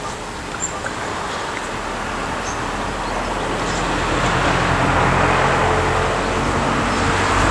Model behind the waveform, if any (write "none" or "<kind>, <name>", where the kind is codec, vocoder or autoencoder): none